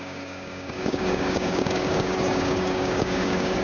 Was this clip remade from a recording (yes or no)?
yes